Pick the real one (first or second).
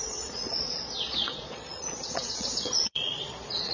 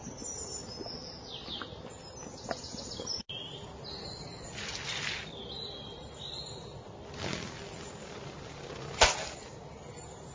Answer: second